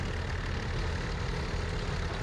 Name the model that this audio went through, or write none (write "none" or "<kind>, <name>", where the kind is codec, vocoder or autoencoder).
none